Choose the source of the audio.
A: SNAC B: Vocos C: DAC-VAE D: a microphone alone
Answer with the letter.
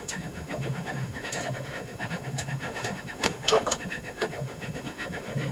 C